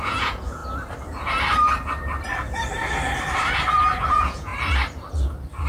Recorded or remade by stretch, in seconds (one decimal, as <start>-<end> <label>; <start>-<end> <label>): 0.0-0.6 remade; 0.6-4.0 recorded; 4.0-4.5 remade; 4.5-5.7 recorded